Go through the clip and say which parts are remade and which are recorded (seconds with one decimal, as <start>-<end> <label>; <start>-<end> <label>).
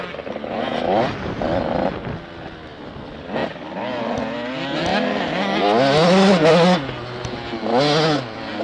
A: 0.0-8.6 recorded